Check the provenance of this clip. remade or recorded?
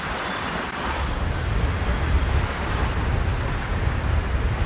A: recorded